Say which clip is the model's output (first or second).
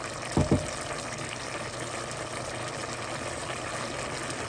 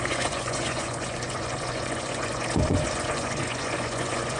second